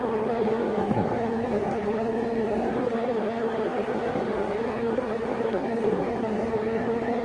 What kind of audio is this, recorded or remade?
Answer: remade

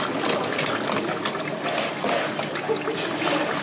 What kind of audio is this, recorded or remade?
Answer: recorded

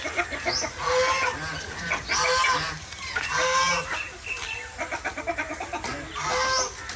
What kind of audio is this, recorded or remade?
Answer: recorded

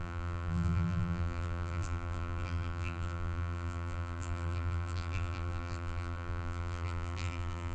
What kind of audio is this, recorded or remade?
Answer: remade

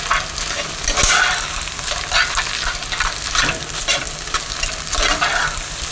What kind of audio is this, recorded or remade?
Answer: recorded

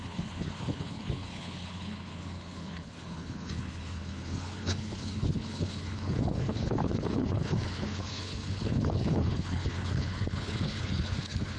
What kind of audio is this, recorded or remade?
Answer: remade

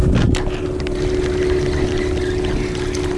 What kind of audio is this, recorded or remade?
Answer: recorded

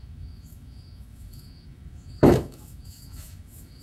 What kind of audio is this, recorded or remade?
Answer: remade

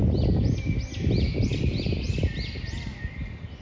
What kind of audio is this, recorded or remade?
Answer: recorded